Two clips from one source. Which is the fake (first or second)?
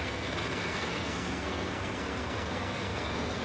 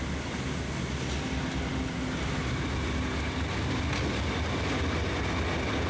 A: first